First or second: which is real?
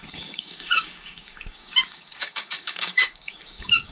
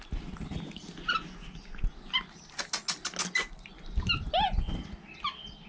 second